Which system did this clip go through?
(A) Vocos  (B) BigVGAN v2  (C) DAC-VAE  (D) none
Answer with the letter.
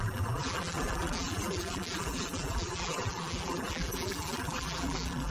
B